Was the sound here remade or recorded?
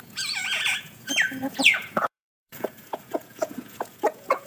remade